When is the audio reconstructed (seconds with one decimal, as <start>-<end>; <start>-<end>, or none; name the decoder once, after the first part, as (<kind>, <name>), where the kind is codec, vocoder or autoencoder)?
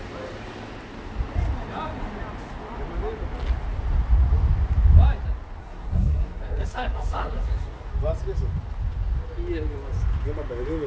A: 5.6-7.9 (codec, SNAC)